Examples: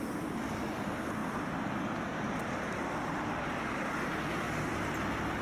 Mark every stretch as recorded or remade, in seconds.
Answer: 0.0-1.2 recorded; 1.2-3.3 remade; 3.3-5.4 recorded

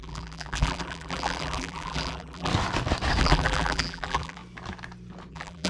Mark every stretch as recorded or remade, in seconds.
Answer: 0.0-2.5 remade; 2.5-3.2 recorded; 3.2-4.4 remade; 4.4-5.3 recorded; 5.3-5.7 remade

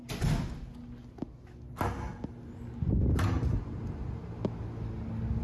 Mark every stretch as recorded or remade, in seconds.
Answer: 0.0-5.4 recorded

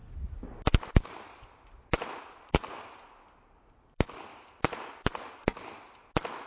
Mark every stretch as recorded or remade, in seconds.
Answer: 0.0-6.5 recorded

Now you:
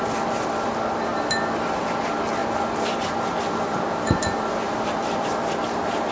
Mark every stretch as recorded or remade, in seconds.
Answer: 0.0-6.1 remade

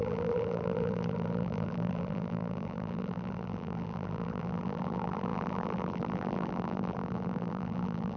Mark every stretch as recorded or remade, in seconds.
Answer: 0.0-8.2 remade

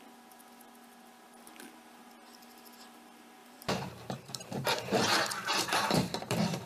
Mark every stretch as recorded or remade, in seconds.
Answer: 0.0-3.4 recorded; 3.4-6.7 remade